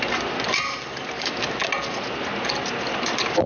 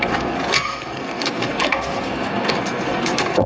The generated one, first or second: second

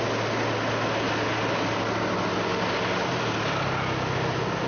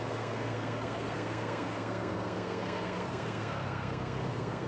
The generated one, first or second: second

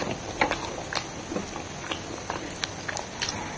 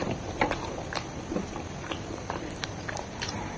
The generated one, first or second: second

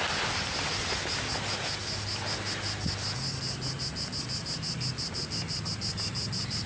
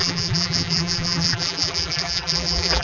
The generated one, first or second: second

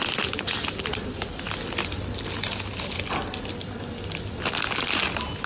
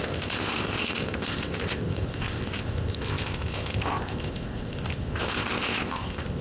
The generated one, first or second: second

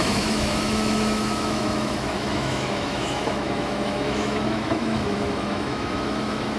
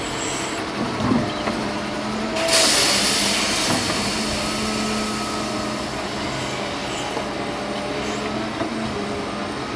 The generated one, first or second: first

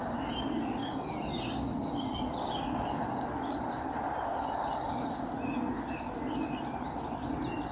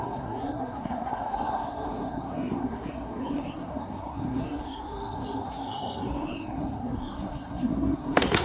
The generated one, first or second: second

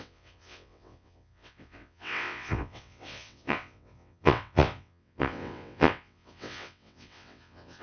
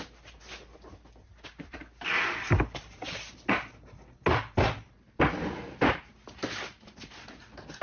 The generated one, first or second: first